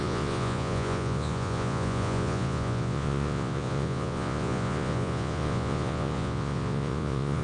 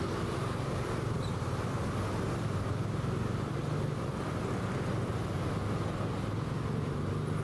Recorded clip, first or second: second